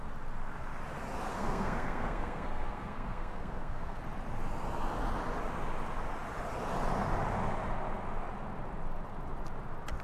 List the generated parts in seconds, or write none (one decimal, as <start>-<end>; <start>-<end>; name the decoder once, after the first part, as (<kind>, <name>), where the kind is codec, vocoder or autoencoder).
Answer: 1.3-4.0 (codec, SNAC)